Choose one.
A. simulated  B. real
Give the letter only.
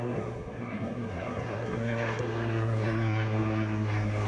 A